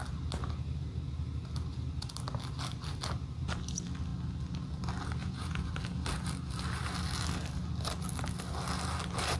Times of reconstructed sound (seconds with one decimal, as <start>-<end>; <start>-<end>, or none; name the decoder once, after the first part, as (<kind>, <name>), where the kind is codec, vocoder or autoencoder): 5.2-5.7 (vocoder, Vocos)